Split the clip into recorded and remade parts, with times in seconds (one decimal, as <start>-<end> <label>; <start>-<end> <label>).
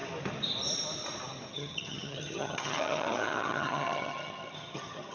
0.0-1.5 recorded; 1.5-5.1 remade